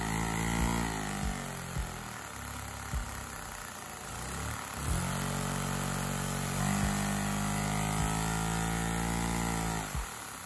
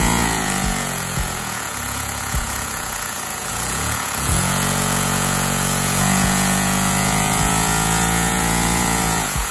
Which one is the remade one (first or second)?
second